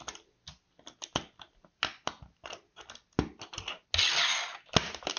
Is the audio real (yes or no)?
yes